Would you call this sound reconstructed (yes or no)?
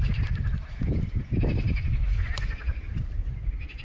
no